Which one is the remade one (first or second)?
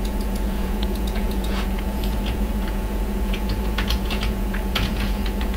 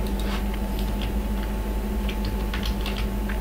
first